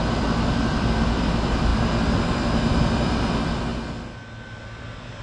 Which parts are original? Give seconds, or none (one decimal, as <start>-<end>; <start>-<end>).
3.7-4.6